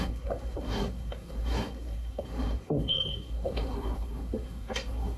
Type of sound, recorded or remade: remade